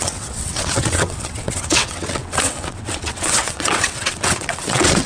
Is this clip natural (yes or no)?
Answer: no